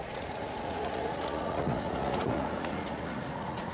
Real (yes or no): no